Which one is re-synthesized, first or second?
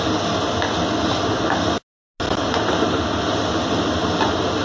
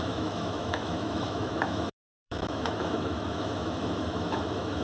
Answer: second